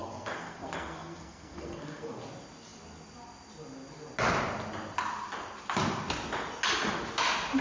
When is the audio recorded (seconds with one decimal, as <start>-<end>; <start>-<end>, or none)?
2.2-7.6